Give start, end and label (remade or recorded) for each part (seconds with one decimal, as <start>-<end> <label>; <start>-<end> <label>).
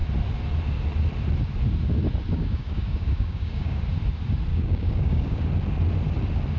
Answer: 0.0-2.3 recorded; 2.3-3.8 remade; 3.8-4.5 recorded; 4.5-5.5 remade; 5.5-6.6 recorded